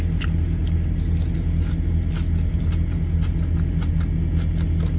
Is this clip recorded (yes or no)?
yes